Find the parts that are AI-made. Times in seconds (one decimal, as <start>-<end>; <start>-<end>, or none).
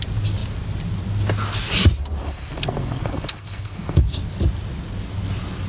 2.2-4.2